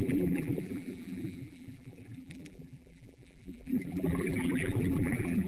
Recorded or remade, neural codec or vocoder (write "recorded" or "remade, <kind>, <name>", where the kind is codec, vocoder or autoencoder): remade, vocoder, BigVGAN v2